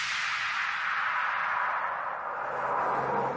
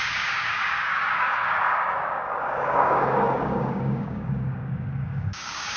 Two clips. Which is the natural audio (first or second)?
first